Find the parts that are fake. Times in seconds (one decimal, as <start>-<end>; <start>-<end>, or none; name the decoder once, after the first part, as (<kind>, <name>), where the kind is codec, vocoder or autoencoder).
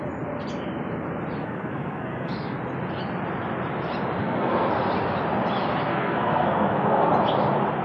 1.4-2.3 (codec, SNAC); 4.2-4.7; 5.9-7.1